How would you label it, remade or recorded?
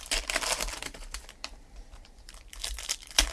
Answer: remade